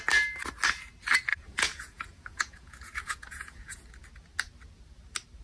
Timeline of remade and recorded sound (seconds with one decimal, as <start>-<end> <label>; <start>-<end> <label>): 0.0-1.3 recorded; 1.3-3.8 remade; 3.8-5.4 recorded